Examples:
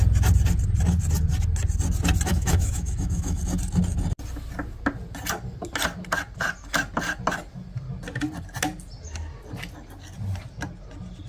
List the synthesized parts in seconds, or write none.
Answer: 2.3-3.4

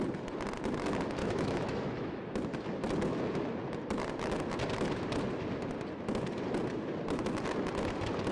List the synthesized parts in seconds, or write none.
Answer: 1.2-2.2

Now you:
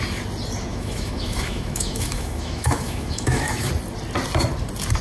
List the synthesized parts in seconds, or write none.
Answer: 0.7-3.7

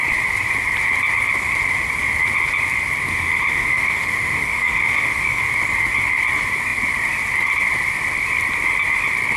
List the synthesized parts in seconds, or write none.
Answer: 3.1-5.4

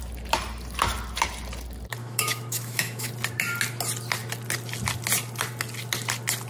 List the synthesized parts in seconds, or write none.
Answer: 2.0-3.1

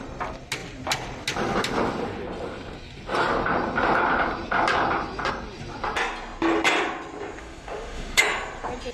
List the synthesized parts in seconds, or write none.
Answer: 7.4-8.2

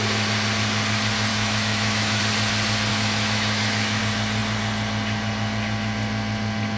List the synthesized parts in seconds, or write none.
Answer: 1.3-2.2; 2.9-4.0